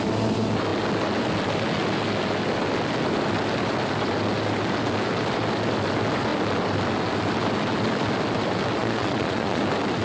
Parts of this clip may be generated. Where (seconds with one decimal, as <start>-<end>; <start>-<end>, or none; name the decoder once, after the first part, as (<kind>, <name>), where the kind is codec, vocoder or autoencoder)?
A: 8.8-9.6 (vocoder, Vocos)